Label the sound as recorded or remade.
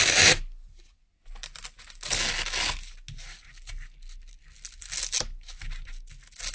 recorded